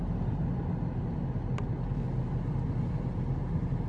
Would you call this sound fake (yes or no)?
no